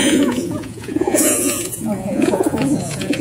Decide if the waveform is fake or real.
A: fake